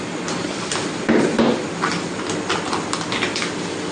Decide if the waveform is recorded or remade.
recorded